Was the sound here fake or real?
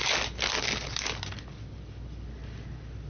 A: real